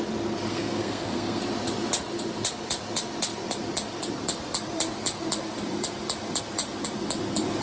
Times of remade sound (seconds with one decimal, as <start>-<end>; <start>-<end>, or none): 0.5-1.4